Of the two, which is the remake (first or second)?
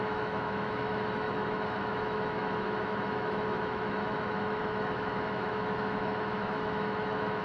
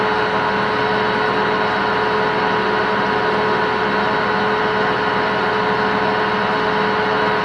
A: first